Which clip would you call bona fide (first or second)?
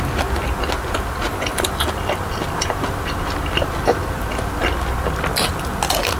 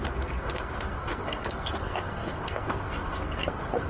first